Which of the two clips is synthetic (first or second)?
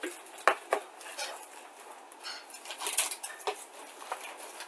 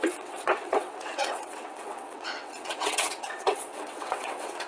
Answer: second